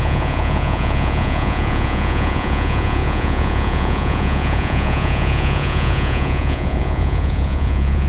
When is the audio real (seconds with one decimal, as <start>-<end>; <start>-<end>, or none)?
none